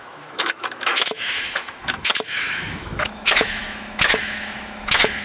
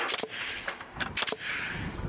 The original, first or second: second